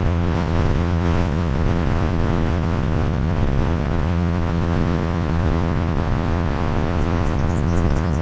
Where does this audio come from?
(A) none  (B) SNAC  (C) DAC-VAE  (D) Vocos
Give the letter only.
D